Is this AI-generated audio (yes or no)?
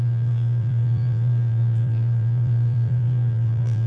yes